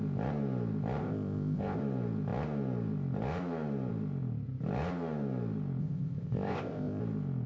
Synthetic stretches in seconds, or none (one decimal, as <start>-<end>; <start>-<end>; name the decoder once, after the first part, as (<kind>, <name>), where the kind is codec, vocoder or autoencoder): 1.0-1.8 (codec, ZipCodec); 5.8-7.0